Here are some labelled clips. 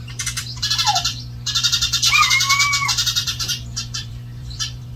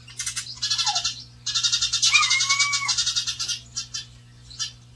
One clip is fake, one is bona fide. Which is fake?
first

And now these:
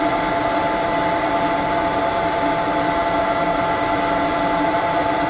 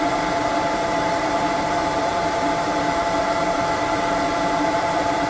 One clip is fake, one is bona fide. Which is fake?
second